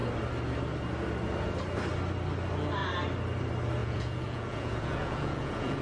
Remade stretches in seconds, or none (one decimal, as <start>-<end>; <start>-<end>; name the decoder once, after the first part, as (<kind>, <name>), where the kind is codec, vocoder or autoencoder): 3.8-5.8 (vocoder, Vocos)